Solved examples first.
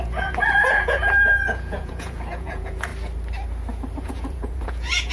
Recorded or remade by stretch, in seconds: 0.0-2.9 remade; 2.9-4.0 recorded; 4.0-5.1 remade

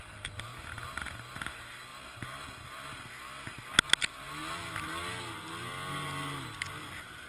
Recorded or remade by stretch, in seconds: 0.0-7.3 recorded

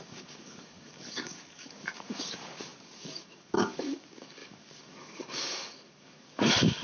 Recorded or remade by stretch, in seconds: 0.0-6.8 remade

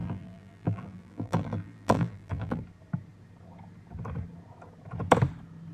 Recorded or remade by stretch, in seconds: 0.0-2.6 remade; 2.6-5.7 recorded

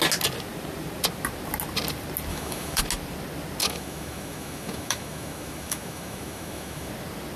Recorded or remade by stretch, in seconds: 0.0-2.3 recorded; 2.3-2.8 remade; 2.8-3.6 recorded; 3.6-6.9 remade; 6.9-7.4 recorded

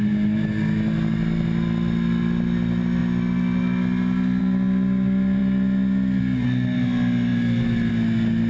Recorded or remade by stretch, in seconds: 0.0-8.5 recorded